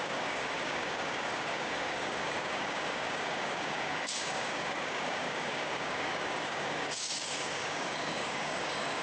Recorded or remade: remade